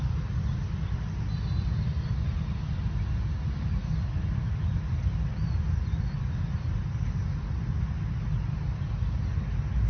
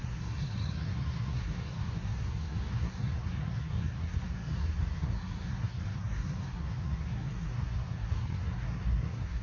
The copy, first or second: second